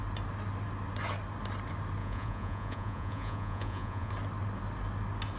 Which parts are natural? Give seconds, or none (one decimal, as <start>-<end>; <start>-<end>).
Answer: 0.0-2.0; 4.1-5.4